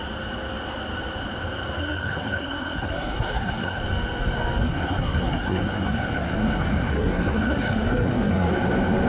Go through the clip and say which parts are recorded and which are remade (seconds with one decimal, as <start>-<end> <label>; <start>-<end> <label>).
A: 0.0-1.8 recorded; 1.8-3.8 remade; 3.8-4.6 recorded; 4.6-8.5 remade; 8.5-9.1 recorded